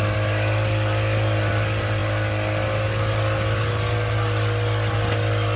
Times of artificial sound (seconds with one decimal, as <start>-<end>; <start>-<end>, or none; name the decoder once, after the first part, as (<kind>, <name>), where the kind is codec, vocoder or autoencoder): none